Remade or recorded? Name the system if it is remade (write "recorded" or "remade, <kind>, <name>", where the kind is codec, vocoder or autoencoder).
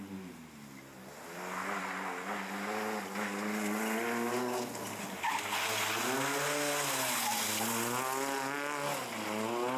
recorded